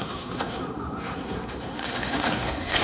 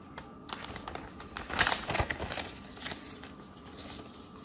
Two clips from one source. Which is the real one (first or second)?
second